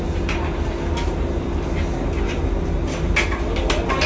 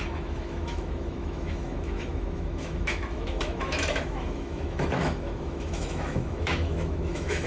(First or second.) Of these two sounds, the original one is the first